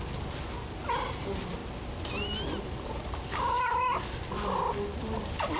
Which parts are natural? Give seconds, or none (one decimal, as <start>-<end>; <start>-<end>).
0.0-5.6